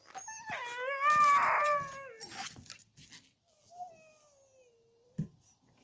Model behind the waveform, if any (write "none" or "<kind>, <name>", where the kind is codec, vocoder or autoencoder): none